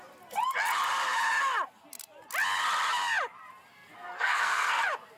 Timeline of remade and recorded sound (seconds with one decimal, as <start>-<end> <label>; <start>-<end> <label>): 0.0-3.7 recorded; 3.7-4.8 remade; 4.8-5.2 recorded